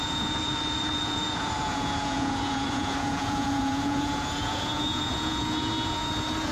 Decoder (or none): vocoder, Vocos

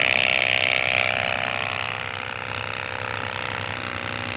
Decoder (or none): none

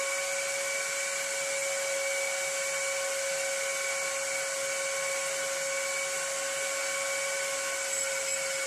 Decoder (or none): none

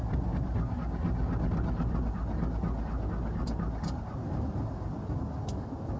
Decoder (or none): none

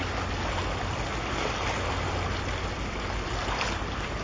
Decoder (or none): none